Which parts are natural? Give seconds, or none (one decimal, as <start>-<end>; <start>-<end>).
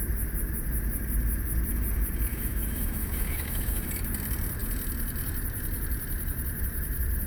0.0-2.3; 3.9-7.3